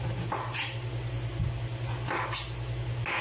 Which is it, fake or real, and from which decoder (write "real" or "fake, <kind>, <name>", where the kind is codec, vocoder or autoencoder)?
real